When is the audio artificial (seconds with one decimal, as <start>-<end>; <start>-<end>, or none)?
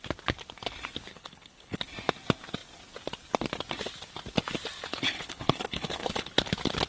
1.1-1.8; 4.9-6.5